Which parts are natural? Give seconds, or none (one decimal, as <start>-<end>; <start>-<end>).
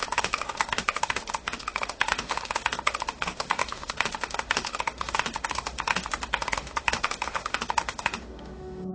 none